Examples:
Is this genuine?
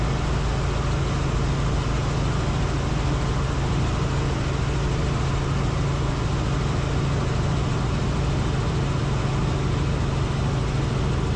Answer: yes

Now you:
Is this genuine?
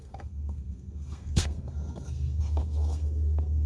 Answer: no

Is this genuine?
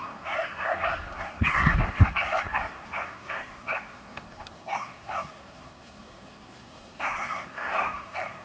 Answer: no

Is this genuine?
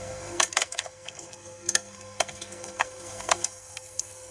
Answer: no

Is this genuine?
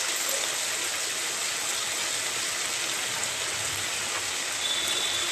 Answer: yes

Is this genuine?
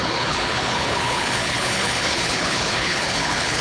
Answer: no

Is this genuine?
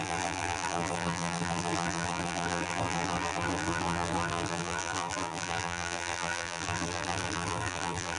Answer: no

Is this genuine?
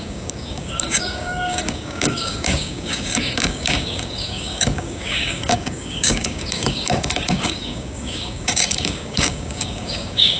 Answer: no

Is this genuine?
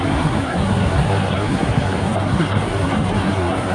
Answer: no